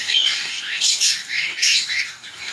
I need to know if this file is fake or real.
fake